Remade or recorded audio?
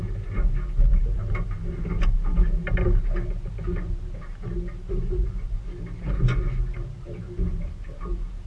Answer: recorded